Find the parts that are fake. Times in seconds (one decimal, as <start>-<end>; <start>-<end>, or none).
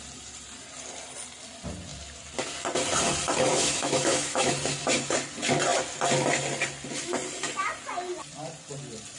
3.5-4.5